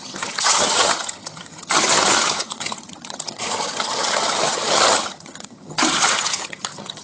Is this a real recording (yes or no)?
no